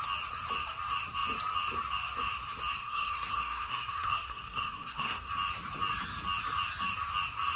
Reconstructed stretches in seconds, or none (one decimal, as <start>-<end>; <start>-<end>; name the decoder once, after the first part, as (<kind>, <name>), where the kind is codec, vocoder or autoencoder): 2.8-5.3 (codec, SNAC)